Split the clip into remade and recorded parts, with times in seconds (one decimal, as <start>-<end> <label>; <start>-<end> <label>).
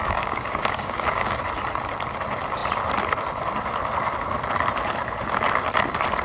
0.0-1.4 remade; 1.4-6.2 recorded